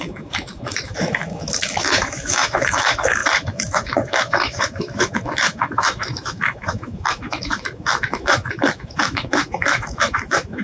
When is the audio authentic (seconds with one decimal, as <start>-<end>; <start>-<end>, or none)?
none